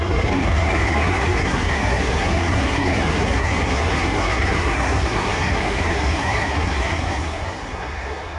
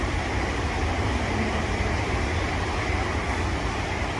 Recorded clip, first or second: second